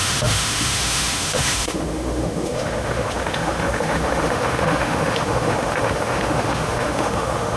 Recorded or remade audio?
remade